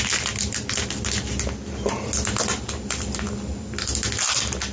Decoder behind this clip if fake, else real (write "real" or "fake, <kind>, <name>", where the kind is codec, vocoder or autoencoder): real